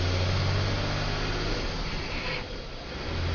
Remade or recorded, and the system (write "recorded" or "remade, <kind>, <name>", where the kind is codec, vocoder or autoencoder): recorded